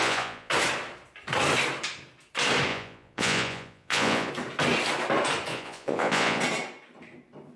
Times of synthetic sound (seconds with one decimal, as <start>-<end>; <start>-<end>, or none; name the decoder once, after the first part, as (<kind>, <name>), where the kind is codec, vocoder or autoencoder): 0.0-0.5 (vocoder, Vocos); 2.7-4.3; 5.5-6.4